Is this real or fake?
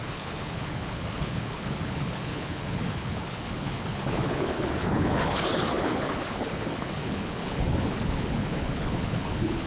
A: fake